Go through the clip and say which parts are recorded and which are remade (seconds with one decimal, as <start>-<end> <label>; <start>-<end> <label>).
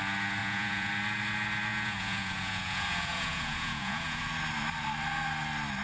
0.0-0.4 recorded; 0.4-0.9 remade; 0.9-1.7 recorded; 1.7-4.2 remade; 4.2-5.8 recorded